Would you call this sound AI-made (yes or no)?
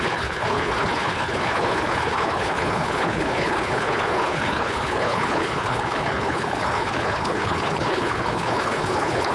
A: yes